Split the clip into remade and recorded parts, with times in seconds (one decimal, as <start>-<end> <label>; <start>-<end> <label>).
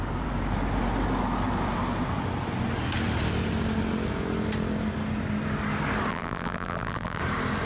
0.0-6.1 recorded; 6.1-7.2 remade; 7.2-7.7 recorded